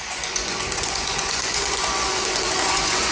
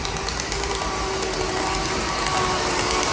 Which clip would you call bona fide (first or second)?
second